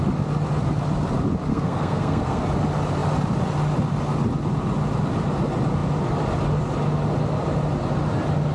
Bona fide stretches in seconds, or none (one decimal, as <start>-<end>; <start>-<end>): 0.0-1.5; 2.4-8.5